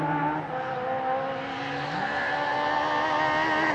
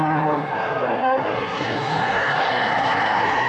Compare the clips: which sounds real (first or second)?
first